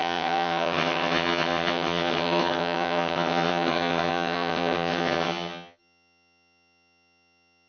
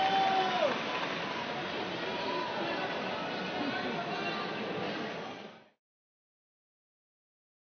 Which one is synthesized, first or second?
first